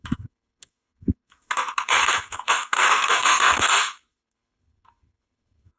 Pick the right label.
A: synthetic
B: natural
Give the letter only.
A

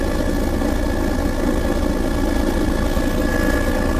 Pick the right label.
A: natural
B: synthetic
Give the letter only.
A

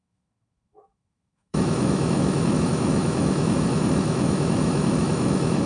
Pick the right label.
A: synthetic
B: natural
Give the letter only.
A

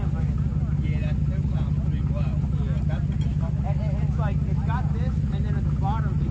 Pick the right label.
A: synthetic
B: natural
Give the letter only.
B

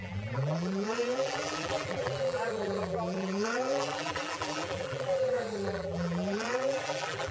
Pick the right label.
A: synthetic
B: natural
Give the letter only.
A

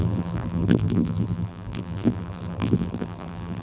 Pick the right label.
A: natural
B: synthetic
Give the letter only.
B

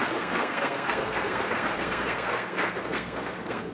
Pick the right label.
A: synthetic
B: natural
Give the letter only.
A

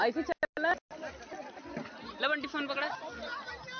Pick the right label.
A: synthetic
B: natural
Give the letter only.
B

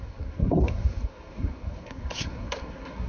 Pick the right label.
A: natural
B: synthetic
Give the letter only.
B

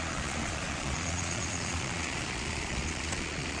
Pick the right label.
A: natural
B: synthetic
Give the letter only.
B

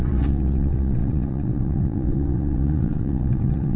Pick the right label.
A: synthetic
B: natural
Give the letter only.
A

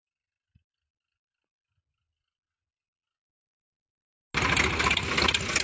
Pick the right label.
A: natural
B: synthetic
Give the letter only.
A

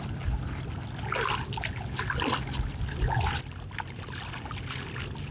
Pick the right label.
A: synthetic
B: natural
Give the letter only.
B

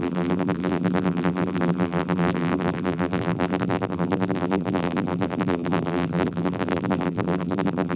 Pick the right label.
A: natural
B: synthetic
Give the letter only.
B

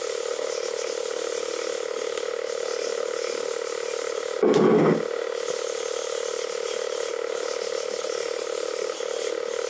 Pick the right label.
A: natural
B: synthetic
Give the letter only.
A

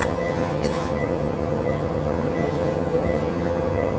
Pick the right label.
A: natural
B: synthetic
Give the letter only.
B